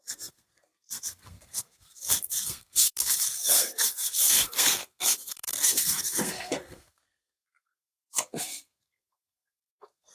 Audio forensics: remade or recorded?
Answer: remade